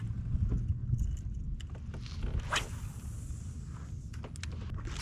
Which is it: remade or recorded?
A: recorded